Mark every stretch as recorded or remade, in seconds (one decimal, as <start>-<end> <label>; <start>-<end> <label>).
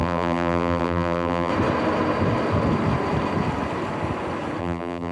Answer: 0.0-1.5 remade; 1.5-4.6 recorded; 4.6-5.1 remade